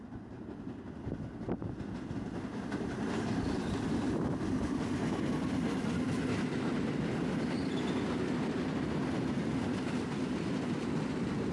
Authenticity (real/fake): real